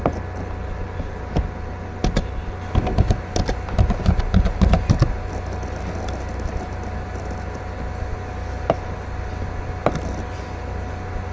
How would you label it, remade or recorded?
recorded